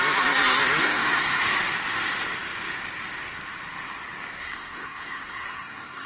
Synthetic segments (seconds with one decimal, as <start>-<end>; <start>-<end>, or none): 0.8-1.4; 4.4-6.1